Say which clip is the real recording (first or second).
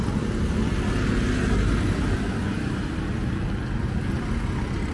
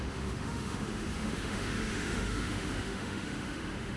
first